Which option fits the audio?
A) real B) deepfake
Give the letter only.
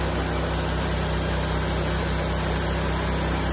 A